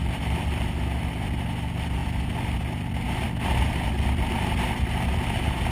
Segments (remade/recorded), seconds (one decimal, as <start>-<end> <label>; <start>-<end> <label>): 0.0-5.7 recorded